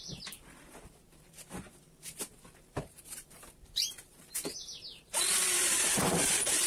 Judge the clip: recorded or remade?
remade